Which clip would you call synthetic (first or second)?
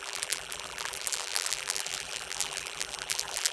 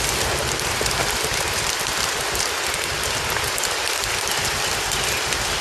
first